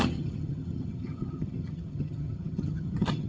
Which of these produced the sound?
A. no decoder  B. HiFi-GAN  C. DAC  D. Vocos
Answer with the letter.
B